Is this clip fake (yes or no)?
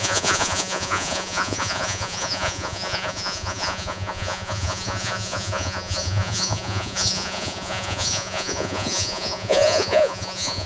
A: yes